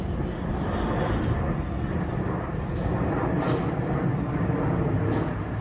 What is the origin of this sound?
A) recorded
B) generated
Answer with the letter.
A